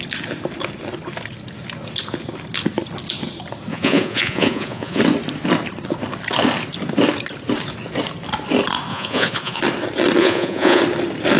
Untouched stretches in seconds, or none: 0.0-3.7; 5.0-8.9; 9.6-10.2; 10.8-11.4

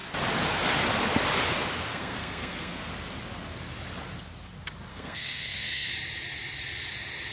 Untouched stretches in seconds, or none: 0.0-1.9; 2.9-4.9; 5.9-7.3

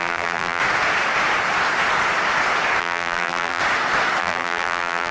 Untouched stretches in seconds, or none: 0.6-2.8; 3.6-4.2

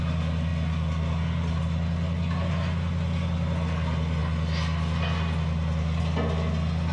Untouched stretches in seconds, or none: 0.0-6.9

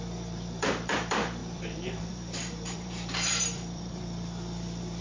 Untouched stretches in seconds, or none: none